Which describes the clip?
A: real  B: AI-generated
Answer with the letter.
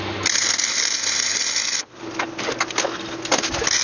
A